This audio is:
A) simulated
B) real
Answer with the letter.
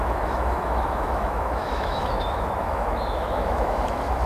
A